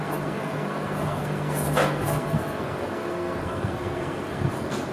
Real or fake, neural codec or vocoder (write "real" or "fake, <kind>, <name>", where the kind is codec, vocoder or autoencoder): fake, codec, SNAC